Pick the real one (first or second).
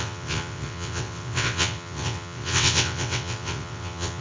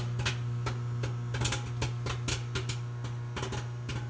second